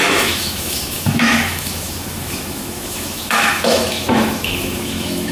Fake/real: fake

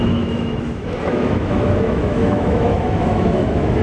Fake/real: fake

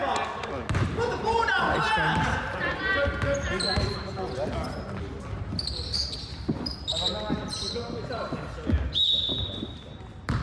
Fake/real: real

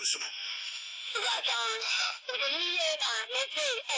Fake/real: fake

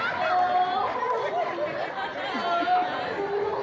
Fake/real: real